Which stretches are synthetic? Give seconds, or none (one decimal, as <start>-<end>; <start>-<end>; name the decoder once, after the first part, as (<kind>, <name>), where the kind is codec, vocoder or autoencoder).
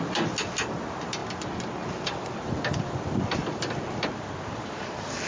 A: none